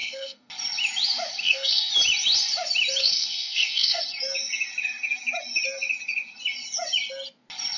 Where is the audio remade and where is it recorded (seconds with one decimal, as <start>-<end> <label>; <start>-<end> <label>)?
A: 0.0-0.5 remade; 0.5-1.4 recorded; 1.4-1.9 remade; 1.9-3.0 recorded; 3.0-4.0 remade; 4.0-7.8 recorded